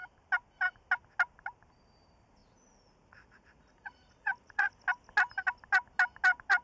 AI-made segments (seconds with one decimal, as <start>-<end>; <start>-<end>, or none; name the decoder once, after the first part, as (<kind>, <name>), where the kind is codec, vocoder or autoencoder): 2.4-4.8 (vocoder, Vocos)